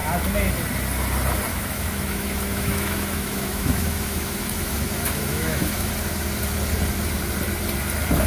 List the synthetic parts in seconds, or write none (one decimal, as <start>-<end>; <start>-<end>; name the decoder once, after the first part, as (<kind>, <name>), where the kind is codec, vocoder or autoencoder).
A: 1.5-5.9 (autoencoder, DAC-VAE)